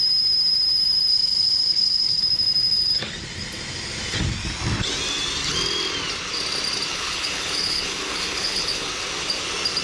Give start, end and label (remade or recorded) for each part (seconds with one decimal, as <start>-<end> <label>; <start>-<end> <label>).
0.0-1.1 recorded; 1.1-2.2 remade; 2.2-6.9 recorded; 6.9-8.9 remade; 8.9-9.8 recorded